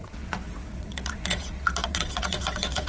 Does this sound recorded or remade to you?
remade